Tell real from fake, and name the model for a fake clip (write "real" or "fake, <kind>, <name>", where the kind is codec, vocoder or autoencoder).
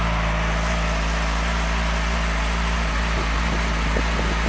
real